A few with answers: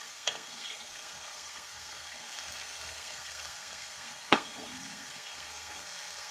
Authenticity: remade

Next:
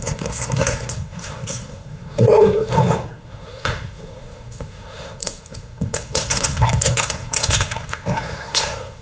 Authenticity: remade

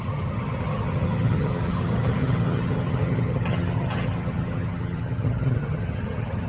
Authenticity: remade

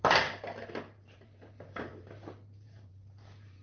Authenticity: remade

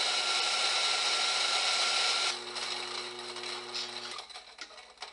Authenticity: recorded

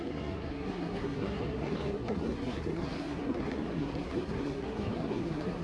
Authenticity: remade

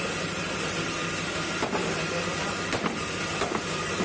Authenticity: recorded